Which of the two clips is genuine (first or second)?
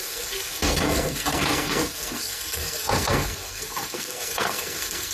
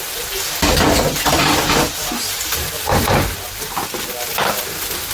second